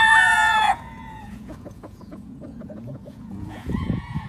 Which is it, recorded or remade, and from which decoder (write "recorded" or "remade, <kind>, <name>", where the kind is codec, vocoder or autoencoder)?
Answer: remade, vocoder, Vocos